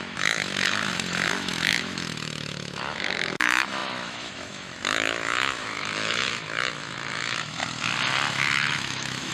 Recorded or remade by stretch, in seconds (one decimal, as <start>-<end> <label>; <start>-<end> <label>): 0.0-7.6 remade; 7.6-8.3 recorded; 8.3-9.3 remade